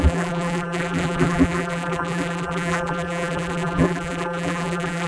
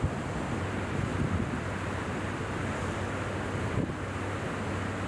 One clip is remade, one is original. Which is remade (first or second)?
first